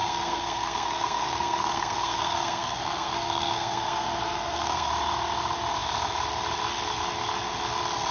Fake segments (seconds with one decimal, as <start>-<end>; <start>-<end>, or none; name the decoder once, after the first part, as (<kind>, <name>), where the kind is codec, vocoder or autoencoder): 0.0-4.9 (codec, SNAC)